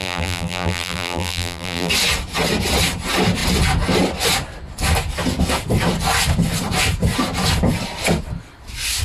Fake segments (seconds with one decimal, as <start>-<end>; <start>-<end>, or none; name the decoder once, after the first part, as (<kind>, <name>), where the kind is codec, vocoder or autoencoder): 0.0-1.9 (vocoder, BigVGAN v2)